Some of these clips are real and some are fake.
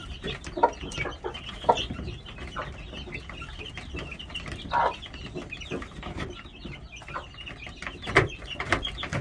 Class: real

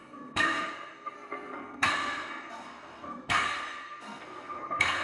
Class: fake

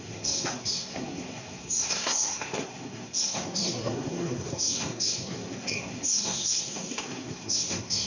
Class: fake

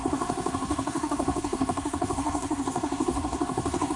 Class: fake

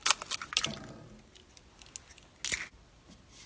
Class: real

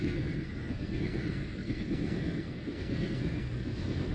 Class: fake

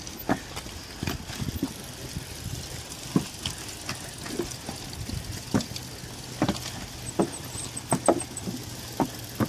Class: real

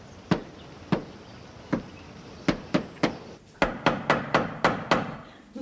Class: real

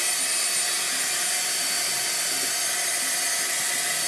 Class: real